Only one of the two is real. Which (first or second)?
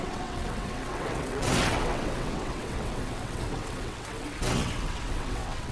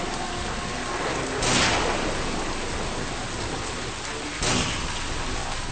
second